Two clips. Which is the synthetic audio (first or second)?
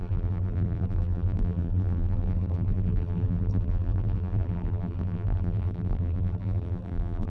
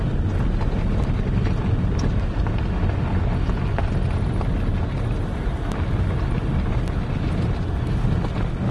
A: first